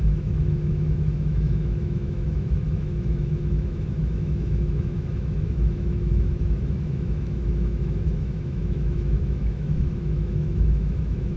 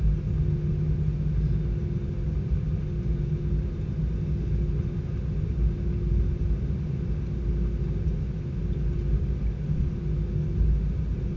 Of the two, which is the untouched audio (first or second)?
second